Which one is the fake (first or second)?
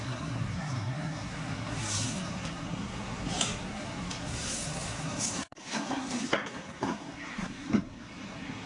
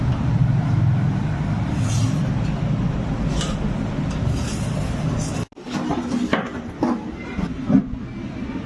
first